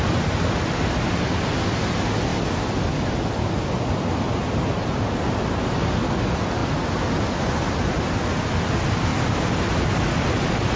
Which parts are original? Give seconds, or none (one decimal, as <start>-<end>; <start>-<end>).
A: 0.0-2.3; 4.7-9.1